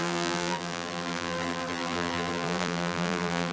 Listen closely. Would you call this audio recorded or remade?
remade